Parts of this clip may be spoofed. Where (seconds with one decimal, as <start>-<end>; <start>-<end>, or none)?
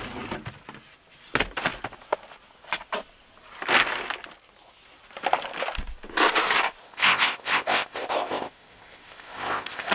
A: 6.8-9.9